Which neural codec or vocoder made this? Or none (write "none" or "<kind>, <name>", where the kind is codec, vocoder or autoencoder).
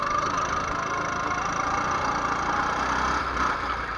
none